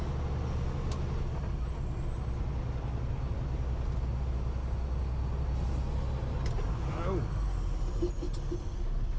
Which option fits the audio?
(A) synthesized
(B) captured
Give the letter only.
B